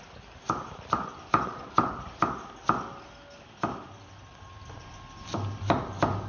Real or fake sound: real